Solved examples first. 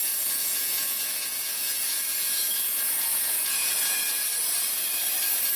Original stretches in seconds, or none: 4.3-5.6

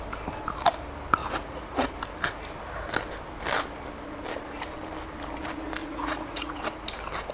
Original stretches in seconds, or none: 0.0-1.2; 1.9-5.8; 6.6-7.3

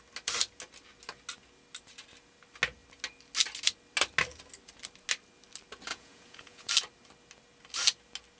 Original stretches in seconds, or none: 0.0-5.9; 6.7-8.4